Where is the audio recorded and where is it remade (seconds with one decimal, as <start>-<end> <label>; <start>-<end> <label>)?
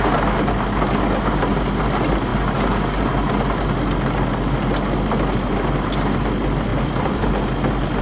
0.0-6.7 recorded; 6.7-7.3 remade; 7.3-8.0 recorded